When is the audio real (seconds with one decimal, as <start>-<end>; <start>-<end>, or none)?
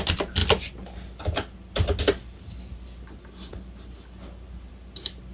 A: 0.0-5.3